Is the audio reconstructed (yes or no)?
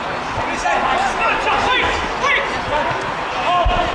no